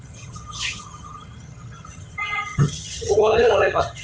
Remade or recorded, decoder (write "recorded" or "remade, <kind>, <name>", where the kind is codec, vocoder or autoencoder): remade, vocoder, HiFi-GAN